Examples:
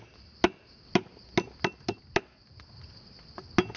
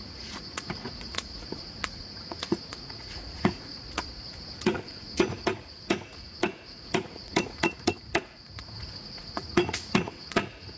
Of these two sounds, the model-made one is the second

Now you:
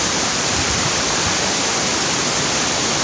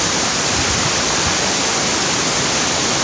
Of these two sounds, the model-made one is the first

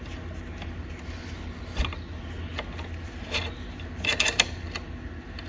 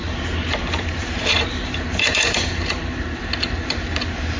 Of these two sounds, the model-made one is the second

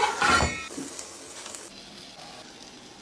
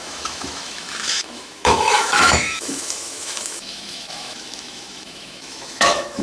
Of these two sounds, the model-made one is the second